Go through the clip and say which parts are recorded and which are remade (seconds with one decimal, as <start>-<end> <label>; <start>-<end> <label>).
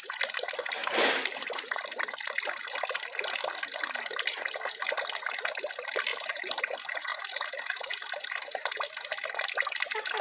0.0-0.8 recorded; 0.8-1.8 remade; 1.8-6.1 recorded; 6.1-6.6 remade; 6.6-7.1 recorded; 7.1-8.2 remade; 8.2-10.2 recorded